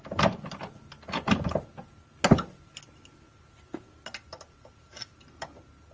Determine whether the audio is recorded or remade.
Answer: recorded